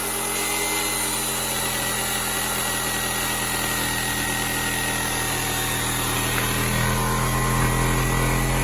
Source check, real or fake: real